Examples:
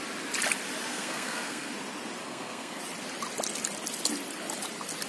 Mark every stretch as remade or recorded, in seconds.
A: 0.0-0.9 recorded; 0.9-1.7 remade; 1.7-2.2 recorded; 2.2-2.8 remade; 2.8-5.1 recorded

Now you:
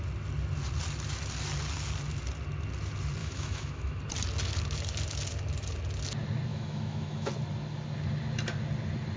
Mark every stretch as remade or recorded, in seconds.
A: 0.0-3.2 recorded; 3.2-4.0 remade; 4.0-6.5 recorded; 6.5-7.3 remade; 7.3-9.2 recorded

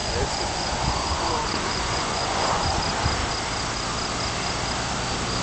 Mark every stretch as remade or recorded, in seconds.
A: 0.0-2.8 remade; 2.8-5.4 recorded

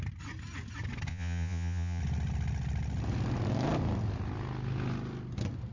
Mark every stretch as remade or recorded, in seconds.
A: 0.0-1.1 recorded; 1.1-2.0 remade; 2.0-5.7 recorded